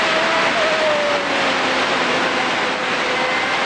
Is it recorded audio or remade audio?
recorded